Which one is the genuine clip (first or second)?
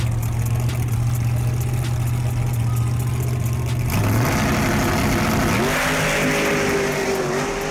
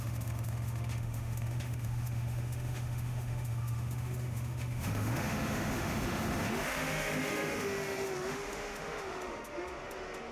first